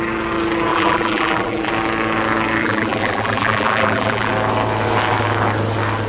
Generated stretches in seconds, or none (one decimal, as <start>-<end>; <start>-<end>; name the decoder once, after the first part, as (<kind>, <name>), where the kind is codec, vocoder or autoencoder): 0.7-1.7 (vocoder, BigVGAN v2); 2.6-4.3